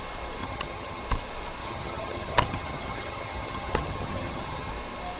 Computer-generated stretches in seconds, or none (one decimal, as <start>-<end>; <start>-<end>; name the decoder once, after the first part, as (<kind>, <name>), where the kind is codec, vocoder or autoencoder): 0.4-1.0 (vocoder, HiFi-GAN); 1.6-4.7